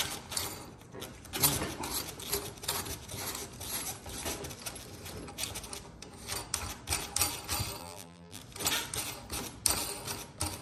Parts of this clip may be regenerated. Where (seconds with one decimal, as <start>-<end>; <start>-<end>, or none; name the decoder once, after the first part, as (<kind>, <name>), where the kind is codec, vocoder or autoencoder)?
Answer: 7.8-8.4 (vocoder, BigVGAN v2)